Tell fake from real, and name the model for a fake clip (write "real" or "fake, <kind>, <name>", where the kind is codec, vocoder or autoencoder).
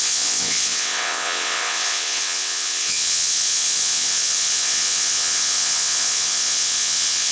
fake, vocoder, WaveNeXt